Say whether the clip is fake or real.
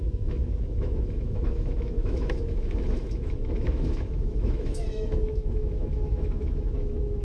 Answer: fake